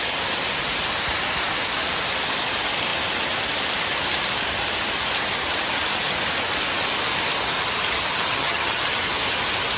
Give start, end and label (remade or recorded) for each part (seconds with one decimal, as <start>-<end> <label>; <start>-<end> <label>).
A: 0.0-8.3 recorded; 8.3-8.8 remade; 8.8-9.8 recorded